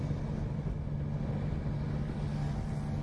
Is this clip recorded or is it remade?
recorded